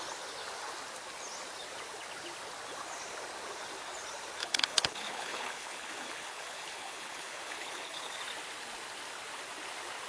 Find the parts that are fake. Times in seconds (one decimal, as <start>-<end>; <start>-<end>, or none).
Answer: 4.4-8.2